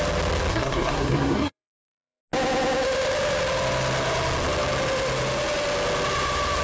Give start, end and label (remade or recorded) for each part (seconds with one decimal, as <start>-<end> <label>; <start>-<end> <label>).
0.0-0.5 recorded; 0.5-2.2 remade; 2.2-6.6 recorded